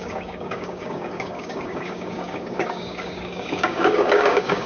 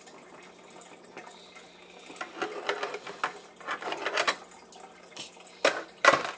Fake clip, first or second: first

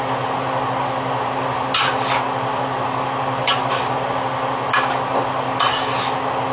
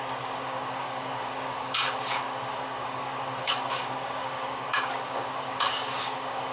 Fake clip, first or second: second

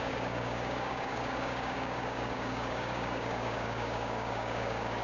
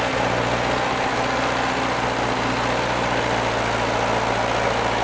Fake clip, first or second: first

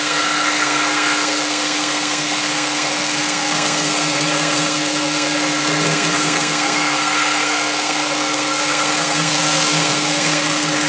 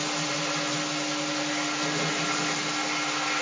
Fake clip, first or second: first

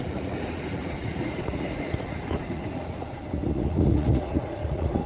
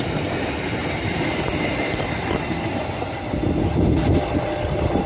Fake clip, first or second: first